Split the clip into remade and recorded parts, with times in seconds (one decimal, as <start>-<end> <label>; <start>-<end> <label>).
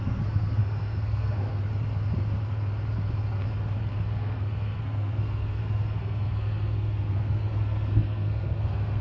0.0-1.5 remade; 1.5-3.9 recorded; 3.9-9.0 remade